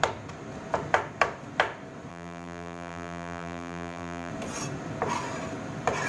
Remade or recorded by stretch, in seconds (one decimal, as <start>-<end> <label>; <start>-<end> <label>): 0.0-2.1 recorded; 2.1-4.3 remade; 4.3-6.1 recorded